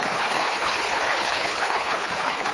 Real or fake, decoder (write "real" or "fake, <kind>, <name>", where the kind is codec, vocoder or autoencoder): fake, codec, HILCodec